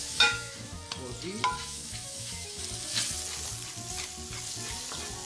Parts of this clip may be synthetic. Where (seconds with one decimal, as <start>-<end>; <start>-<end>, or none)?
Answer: 0.0-0.8; 1.6-2.6